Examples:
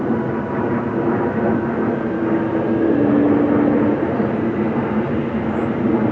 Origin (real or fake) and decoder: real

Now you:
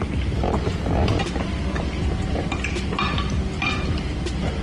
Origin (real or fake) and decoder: real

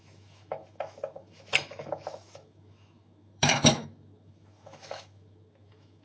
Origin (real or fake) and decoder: fake, autoencoder, DAC-VAE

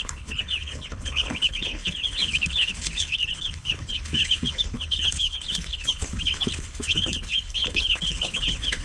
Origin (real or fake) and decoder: fake, codec, HILCodec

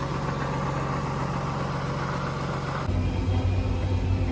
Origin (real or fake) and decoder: real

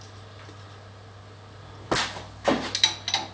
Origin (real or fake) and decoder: real